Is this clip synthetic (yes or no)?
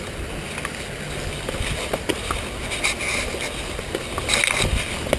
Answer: no